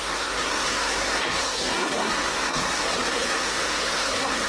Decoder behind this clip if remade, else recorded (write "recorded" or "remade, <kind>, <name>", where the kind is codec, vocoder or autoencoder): remade, codec, SNAC